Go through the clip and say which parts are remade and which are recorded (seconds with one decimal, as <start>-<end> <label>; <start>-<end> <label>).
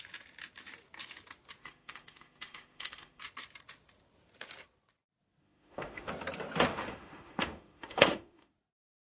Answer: 0.0-1.6 recorded; 1.6-3.2 remade; 3.2-5.4 recorded; 5.4-6.1 remade; 6.1-6.7 recorded; 6.7-8.5 remade; 8.5-9.1 recorded